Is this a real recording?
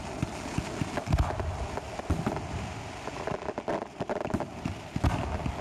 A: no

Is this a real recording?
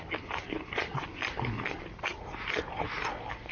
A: yes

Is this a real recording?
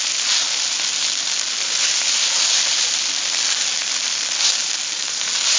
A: yes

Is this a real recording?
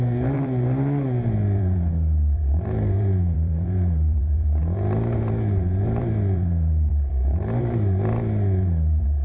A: no